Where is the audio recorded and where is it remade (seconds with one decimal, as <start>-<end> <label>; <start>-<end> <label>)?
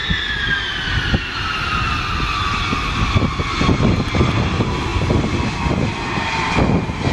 0.0-7.1 recorded